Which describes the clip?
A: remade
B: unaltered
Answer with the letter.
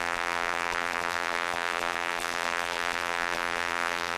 A